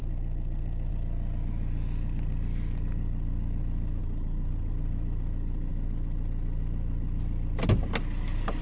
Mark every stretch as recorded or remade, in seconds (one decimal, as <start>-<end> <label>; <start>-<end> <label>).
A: 0.0-4.0 recorded; 4.0-4.7 remade; 4.7-8.6 recorded